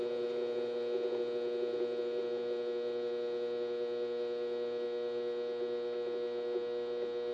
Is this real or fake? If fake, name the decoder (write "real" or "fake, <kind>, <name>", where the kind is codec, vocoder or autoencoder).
real